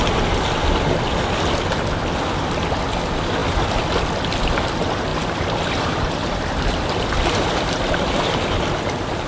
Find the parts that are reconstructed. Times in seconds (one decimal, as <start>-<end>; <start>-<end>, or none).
3.4-4.0; 5.1-8.7